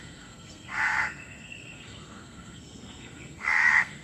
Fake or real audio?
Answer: fake